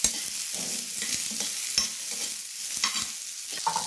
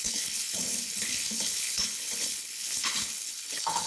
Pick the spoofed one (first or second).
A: second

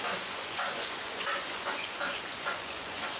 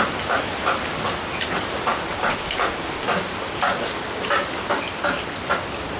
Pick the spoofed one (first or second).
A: first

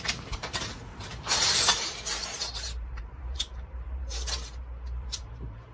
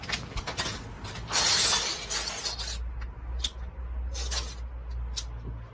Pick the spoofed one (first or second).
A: first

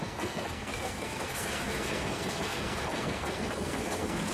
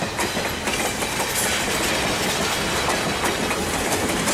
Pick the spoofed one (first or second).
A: first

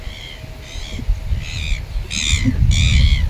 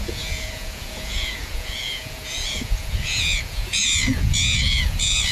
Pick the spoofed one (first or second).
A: second